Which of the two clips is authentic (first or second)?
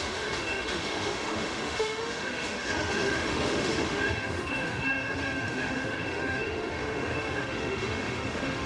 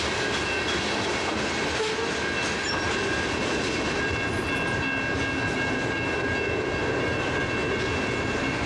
second